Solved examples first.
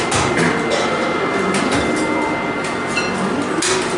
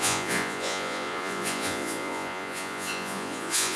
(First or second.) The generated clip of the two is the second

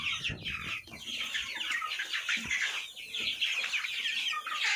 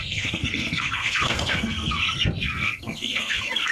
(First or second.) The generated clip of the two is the second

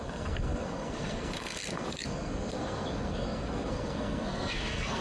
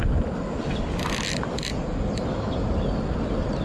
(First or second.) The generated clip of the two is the first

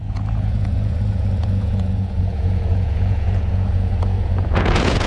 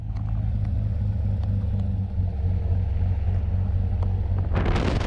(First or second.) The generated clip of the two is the first